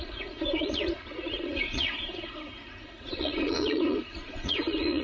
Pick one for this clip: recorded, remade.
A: remade